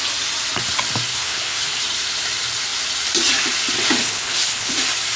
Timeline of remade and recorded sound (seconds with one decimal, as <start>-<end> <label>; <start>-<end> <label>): 0.0-1.1 recorded; 1.1-1.8 remade; 1.8-4.0 recorded; 4.0-4.7 remade; 4.7-5.2 recorded